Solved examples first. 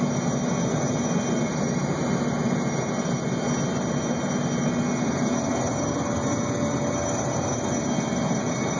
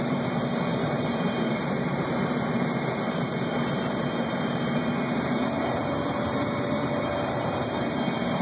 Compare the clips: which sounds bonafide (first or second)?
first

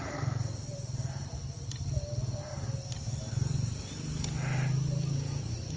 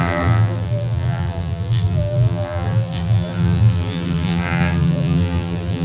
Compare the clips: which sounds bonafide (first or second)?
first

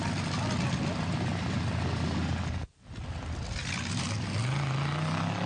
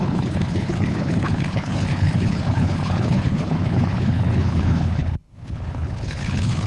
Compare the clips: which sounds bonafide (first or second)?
first